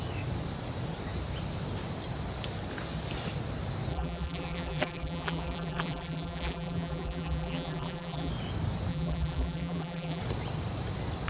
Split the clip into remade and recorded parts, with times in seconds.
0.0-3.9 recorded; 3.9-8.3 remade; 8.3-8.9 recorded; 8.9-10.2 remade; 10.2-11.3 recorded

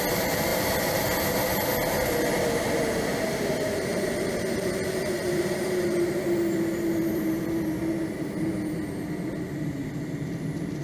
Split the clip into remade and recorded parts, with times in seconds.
0.0-3.1 recorded; 3.1-7.5 remade; 7.5-9.8 recorded; 9.8-10.8 remade

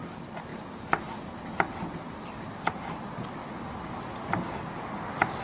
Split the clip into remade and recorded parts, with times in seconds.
0.0-5.4 recorded

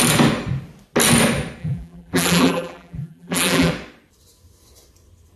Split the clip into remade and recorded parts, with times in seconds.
0.0-1.6 recorded; 1.6-3.7 remade; 3.7-5.4 recorded